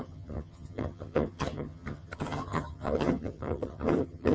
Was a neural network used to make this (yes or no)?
yes